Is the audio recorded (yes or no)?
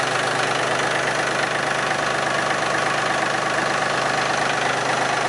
yes